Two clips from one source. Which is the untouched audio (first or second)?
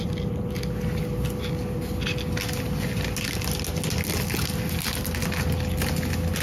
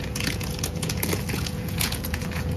first